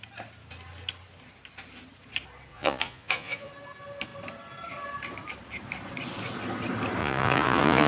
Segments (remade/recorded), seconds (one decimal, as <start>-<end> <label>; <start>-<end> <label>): 0.0-2.5 recorded; 2.5-3.5 remade; 3.5-7.0 recorded; 7.0-7.9 remade